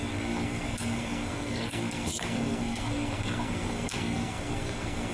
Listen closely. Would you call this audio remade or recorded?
remade